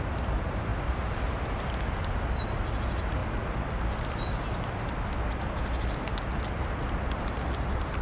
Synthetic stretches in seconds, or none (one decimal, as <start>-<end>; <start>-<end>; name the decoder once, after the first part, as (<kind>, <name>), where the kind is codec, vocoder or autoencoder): none